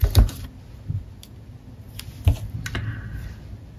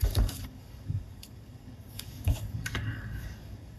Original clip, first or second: first